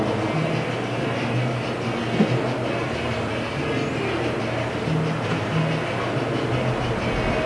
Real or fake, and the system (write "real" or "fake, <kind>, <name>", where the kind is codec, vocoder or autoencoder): real